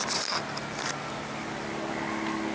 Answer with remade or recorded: recorded